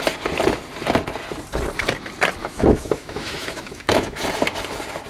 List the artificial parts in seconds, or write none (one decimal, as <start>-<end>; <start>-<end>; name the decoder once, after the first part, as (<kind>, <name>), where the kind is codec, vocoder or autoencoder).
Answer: 2.4-4.2 (autoencoder, DAC-VAE)